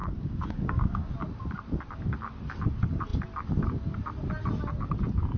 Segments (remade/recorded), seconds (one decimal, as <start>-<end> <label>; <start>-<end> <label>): 0.0-1.1 remade; 1.1-5.4 recorded